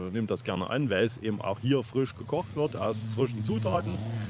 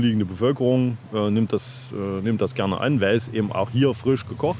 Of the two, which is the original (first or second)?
second